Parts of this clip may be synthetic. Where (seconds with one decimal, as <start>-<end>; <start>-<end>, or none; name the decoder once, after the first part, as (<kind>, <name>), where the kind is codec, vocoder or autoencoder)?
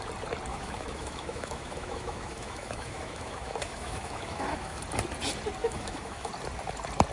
0.5-4.8 (autoencoder, DAC-VAE); 5.6-6.3